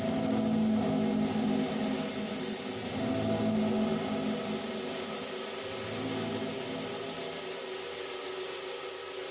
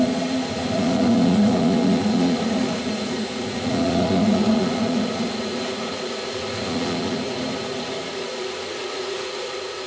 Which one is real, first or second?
first